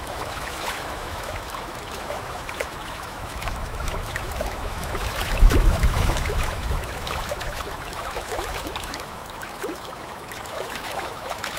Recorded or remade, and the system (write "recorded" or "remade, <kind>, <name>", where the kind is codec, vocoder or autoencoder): remade, autoencoder, DAC-VAE